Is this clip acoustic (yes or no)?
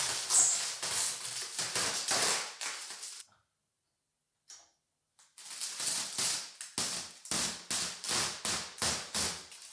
yes